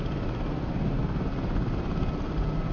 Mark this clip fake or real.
real